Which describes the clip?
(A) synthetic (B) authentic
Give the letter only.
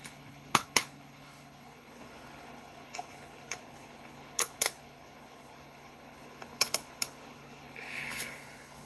A